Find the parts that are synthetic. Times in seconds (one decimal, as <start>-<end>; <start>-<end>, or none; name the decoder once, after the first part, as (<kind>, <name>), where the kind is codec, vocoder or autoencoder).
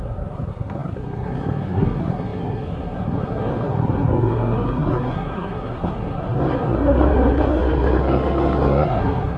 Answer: 0.0-9.4 (codec, SNAC)